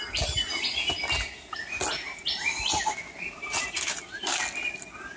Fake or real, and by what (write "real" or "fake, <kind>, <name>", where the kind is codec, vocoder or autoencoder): real